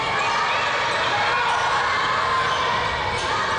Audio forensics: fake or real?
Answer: real